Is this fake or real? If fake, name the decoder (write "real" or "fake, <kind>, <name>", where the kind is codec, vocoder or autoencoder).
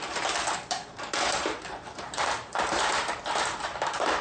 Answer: fake, vocoder, BigVGAN v2